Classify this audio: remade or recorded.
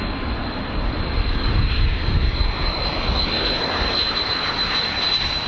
recorded